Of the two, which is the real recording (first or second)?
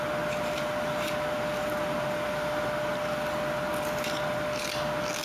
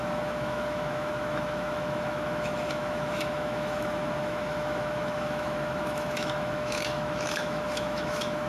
first